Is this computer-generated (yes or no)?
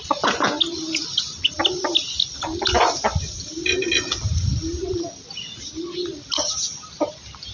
no